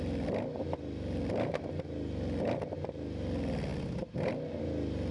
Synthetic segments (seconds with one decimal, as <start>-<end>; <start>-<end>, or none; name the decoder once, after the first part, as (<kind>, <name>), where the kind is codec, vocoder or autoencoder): none